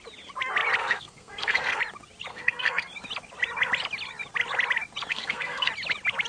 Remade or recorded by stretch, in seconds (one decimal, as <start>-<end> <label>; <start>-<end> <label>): 0.0-0.8 recorded; 0.8-1.8 remade; 1.8-2.3 recorded; 2.3-2.9 remade; 2.9-5.1 recorded; 5.1-5.7 remade; 5.7-6.3 recorded